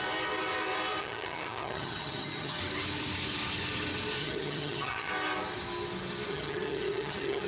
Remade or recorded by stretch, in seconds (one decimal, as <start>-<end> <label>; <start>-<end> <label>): 0.0-1.0 recorded; 1.0-2.6 remade; 2.6-4.2 recorded; 4.2-5.1 remade; 5.1-6.3 recorded; 6.3-7.5 remade